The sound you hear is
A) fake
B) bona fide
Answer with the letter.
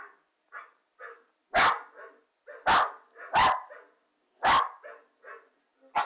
B